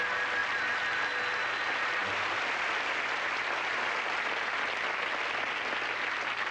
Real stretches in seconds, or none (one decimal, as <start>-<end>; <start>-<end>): 0.0-6.5